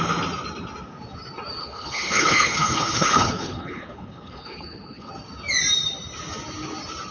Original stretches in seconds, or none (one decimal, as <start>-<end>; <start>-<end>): 0.0-1.6; 5.1-7.1